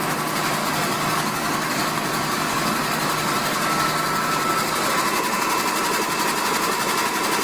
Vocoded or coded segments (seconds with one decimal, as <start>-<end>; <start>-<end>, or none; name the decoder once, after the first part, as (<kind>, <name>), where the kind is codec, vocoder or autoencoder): 0.6-4.9 (codec, DAC)